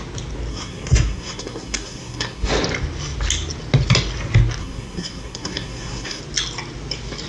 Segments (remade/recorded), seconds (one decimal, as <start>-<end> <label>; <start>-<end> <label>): 0.0-0.5 recorded; 0.5-2.5 remade; 2.5-4.6 recorded; 4.6-6.2 remade; 6.2-7.3 recorded